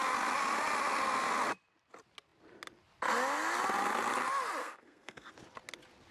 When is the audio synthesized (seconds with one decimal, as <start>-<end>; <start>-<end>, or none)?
4.6-5.3